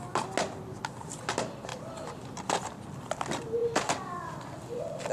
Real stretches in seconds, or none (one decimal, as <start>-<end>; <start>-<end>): 0.0-1.7; 2.7-3.6